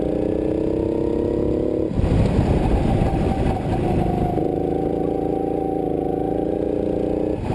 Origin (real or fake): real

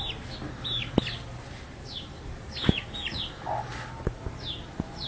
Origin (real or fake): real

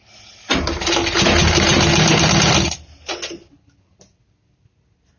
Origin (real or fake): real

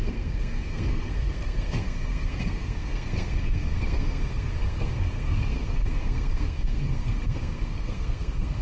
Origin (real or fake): fake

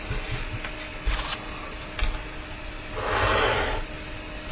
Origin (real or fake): real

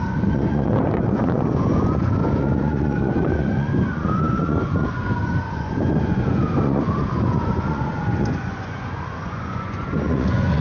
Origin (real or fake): fake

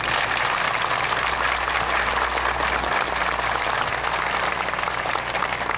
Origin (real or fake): real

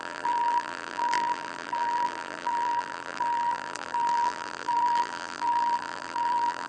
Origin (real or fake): fake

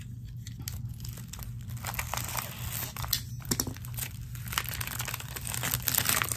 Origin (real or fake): real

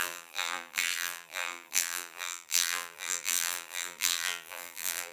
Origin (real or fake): fake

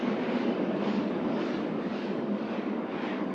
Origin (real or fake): fake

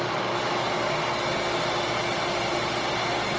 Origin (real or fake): real